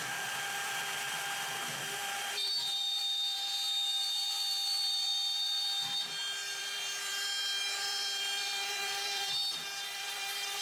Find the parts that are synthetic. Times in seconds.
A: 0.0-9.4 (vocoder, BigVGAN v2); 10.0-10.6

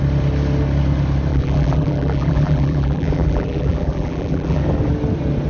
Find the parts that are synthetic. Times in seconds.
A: 1.3-4.6 (vocoder, BigVGAN v2)